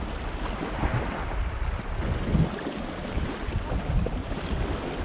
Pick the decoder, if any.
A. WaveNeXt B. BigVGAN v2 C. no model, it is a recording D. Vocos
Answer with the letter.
C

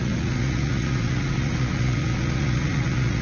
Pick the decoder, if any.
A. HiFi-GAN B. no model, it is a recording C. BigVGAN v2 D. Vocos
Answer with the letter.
D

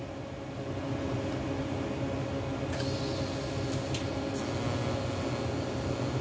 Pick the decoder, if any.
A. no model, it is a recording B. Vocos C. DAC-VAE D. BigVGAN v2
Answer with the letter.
A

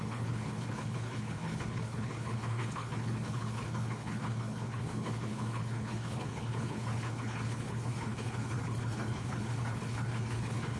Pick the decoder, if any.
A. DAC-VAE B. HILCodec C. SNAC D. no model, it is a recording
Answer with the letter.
B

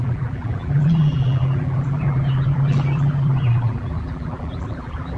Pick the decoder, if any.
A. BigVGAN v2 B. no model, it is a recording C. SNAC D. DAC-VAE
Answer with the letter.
A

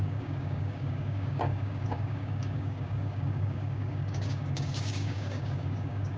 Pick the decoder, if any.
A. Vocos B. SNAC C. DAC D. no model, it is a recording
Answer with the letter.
C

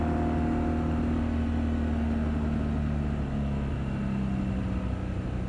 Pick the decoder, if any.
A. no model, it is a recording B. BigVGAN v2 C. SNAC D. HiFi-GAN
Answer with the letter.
A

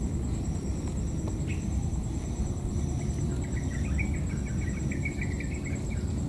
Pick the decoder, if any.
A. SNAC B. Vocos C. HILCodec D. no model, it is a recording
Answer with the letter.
D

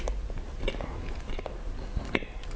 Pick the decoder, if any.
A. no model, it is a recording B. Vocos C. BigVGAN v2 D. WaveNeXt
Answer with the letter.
A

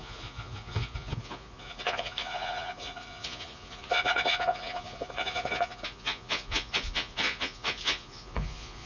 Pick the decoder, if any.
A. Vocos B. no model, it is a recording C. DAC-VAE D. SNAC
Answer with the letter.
A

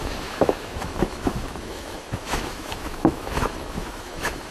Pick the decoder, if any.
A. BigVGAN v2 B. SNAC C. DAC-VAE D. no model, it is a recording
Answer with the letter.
C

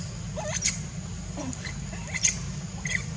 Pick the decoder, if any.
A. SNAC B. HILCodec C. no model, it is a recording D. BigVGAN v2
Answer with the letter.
C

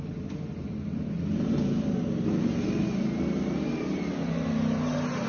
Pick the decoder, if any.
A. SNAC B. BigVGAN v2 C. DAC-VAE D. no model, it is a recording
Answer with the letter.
D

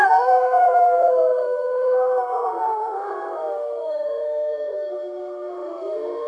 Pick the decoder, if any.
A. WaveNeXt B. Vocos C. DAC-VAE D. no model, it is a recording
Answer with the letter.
C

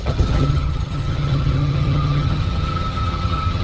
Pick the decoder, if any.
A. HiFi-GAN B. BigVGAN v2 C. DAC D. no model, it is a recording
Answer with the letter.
A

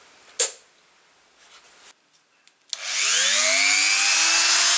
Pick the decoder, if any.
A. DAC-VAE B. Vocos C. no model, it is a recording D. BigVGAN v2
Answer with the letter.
C